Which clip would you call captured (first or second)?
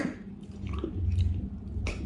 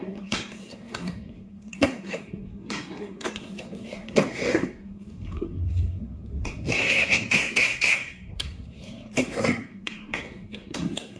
first